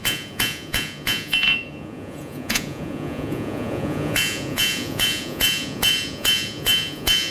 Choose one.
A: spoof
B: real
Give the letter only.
A